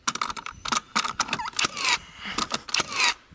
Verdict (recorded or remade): recorded